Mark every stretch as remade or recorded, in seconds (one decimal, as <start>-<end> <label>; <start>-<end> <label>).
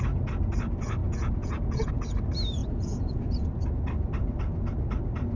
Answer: 0.0-1.0 recorded; 1.0-1.9 remade; 1.9-2.6 recorded; 2.6-3.5 remade; 3.5-5.4 recorded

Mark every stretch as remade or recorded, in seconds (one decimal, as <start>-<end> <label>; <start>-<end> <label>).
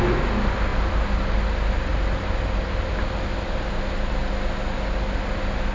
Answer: 0.0-5.7 recorded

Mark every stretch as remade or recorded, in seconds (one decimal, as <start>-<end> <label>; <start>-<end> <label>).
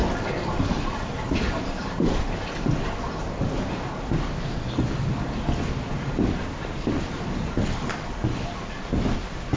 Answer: 0.0-9.6 recorded